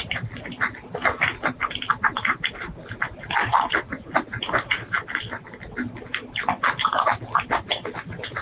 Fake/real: real